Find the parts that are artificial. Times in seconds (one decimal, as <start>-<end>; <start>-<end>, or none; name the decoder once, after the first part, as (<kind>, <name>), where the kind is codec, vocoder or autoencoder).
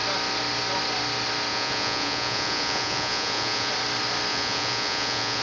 1.5-3.7 (vocoder, Vocos); 4.3-5.4